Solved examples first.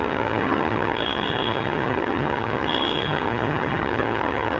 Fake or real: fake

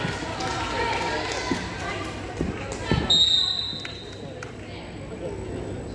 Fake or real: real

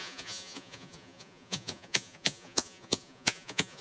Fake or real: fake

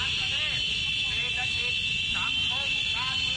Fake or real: real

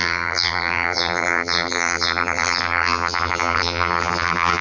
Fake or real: fake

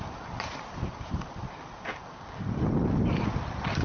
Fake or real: real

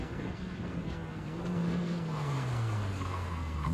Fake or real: fake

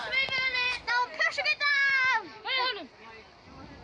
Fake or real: fake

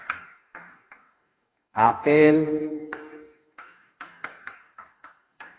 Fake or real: fake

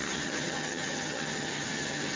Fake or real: fake